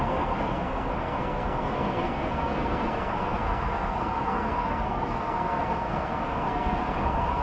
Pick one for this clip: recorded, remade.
remade